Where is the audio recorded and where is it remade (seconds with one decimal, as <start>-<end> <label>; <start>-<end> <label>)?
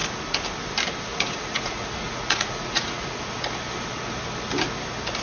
0.0-1.1 recorded; 1.1-3.2 remade; 3.2-5.2 recorded